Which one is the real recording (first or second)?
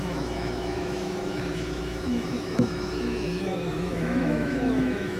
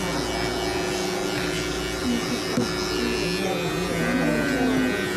second